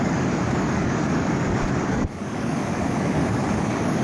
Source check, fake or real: fake